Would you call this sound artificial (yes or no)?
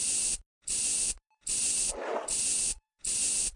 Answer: no